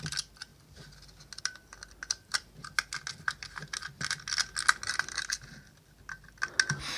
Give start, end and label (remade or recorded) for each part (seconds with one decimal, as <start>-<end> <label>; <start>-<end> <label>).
0.0-7.0 recorded